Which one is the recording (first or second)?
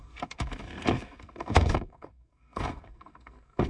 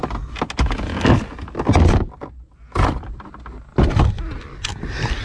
second